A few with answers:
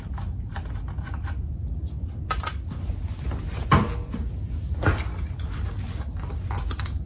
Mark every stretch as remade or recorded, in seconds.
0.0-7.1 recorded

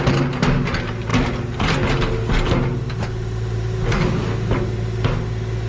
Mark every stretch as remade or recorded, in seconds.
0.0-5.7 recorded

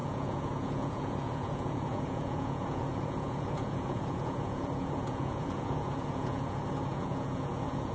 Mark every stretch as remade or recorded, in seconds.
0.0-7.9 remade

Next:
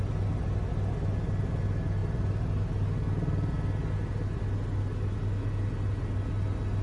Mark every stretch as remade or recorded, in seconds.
0.0-6.8 recorded

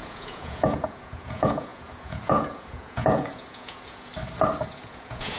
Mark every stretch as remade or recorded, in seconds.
0.0-4.1 remade; 4.1-4.7 recorded; 4.7-5.4 remade

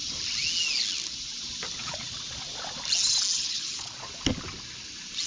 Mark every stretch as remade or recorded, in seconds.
0.0-1.8 recorded; 1.8-2.4 remade; 2.4-3.3 recorded; 3.3-4.1 remade; 4.1-5.3 recorded

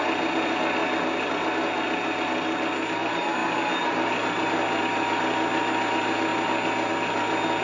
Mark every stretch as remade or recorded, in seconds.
0.0-7.6 recorded